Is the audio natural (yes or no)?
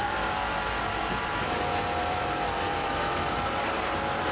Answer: no